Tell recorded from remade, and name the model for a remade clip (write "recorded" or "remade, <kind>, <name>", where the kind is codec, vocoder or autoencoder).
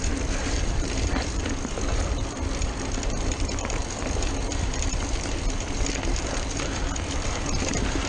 remade, vocoder, BigVGAN v2